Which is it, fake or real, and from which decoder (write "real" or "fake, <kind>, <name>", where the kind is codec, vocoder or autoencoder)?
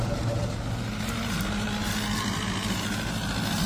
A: real